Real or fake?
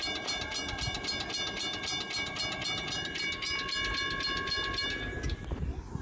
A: real